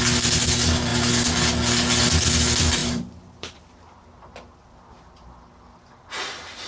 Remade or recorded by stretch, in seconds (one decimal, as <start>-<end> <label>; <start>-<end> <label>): 0.0-2.8 recorded; 2.8-3.6 remade; 3.6-6.7 recorded